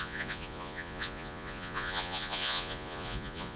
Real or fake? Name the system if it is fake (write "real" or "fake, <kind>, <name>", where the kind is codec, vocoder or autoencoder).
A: fake, vocoder, Vocos